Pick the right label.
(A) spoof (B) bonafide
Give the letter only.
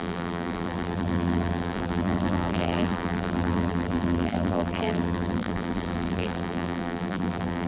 A